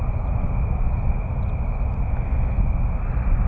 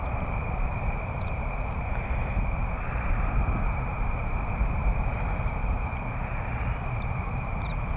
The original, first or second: first